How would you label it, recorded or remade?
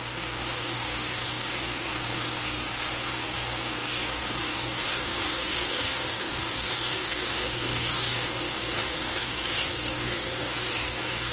remade